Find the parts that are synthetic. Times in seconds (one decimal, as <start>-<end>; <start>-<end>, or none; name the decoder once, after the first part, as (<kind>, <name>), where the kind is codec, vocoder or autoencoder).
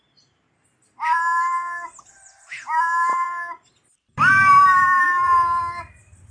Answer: 3.1-5.6 (vocoder, BigVGAN v2)